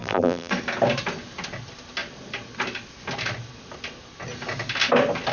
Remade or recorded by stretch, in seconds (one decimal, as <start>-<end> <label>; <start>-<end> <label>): 0.0-0.5 remade; 0.5-5.3 recorded